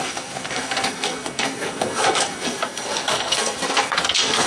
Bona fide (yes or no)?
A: no